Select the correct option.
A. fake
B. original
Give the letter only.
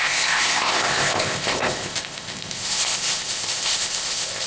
A